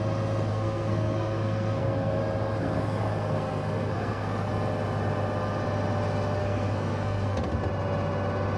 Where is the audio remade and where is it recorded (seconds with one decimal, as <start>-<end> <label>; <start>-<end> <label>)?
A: 0.0-0.5 recorded; 0.5-2.2 remade; 2.2-2.6 recorded; 2.6-4.5 remade; 4.5-6.4 recorded; 6.4-7.5 remade; 7.5-8.6 recorded